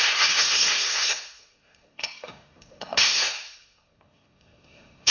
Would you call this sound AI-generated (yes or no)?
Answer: yes